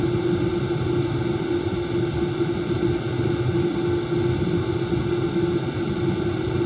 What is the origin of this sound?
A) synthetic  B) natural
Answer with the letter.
B